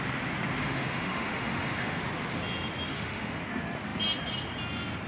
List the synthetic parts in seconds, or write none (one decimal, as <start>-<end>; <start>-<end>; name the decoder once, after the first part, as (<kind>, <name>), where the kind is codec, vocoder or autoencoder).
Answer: 0.6-2.0 (autoencoder, DAC-VAE); 2.9-3.4